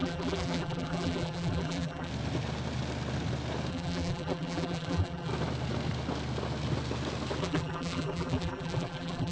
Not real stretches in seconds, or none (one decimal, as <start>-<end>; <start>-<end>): 0.0-2.1; 3.7-5.3; 7.4-9.3